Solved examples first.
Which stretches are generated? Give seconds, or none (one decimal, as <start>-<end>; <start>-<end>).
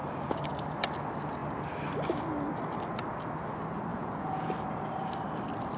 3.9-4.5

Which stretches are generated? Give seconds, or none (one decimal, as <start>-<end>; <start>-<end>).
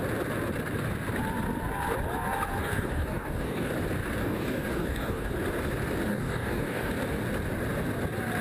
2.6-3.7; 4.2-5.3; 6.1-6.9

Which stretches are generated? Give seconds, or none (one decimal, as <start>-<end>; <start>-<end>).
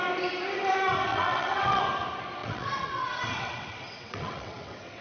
1.1-1.8; 2.4-5.0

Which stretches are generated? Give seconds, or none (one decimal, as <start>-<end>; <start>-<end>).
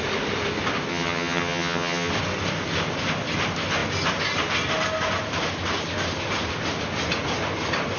0.9-2.1